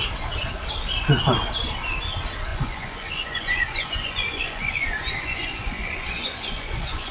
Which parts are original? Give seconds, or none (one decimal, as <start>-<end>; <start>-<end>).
0.0-2.5